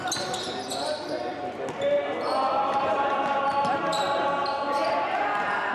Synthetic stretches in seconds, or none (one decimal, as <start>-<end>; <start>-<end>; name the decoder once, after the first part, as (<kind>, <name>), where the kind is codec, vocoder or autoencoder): 3.5-4.0 (vocoder, BigVGAN v2)